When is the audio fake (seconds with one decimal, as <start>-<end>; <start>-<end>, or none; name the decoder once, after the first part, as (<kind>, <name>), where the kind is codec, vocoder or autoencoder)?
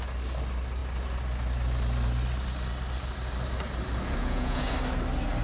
4.2-4.7 (vocoder, Vocos)